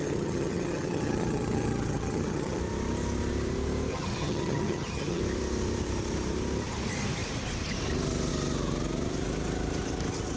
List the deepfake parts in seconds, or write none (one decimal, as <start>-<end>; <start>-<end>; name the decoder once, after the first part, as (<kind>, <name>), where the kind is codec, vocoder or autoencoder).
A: 0.0-2.6 (vocoder, HiFi-GAN); 3.9-5.2